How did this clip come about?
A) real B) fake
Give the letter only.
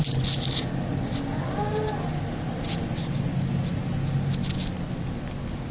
A